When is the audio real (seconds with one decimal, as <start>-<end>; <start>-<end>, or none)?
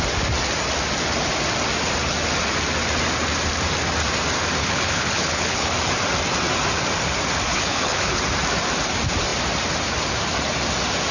0.0-4.6; 5.7-7.5; 8.2-11.1